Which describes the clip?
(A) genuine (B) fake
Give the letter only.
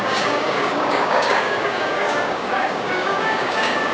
B